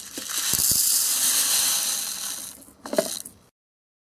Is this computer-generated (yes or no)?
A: no